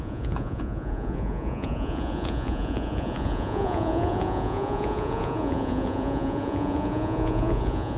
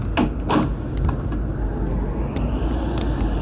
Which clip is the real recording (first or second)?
second